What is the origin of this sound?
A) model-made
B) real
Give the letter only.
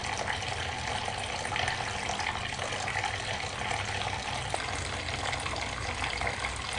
B